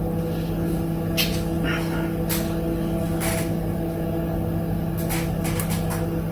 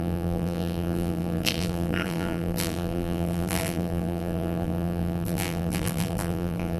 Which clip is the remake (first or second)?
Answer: second